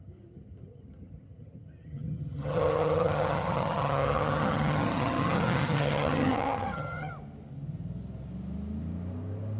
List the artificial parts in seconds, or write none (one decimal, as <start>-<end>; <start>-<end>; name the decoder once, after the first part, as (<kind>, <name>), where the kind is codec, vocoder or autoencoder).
0.0-7.1 (vocoder, HiFi-GAN)